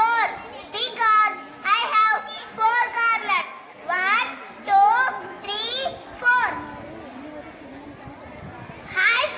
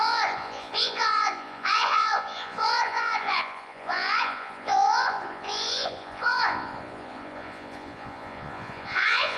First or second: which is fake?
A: second